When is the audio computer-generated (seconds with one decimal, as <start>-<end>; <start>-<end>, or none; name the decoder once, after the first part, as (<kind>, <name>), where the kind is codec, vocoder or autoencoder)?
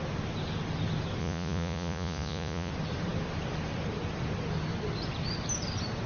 1.2-2.7 (vocoder, Vocos)